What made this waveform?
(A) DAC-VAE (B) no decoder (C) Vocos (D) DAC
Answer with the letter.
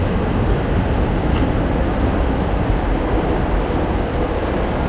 B